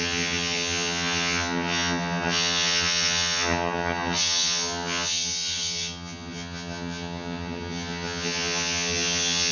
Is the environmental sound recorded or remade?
remade